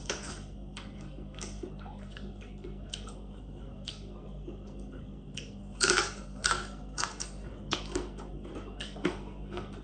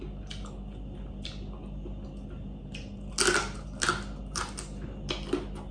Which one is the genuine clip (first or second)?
second